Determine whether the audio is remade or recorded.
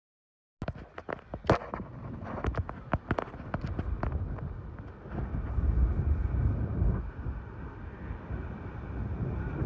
recorded